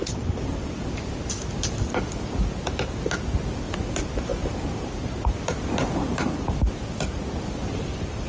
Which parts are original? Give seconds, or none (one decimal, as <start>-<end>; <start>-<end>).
0.8-8.3